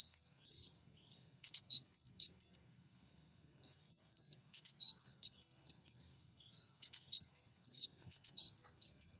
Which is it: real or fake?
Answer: fake